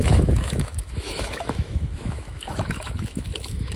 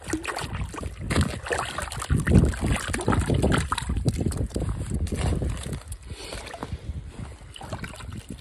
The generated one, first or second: first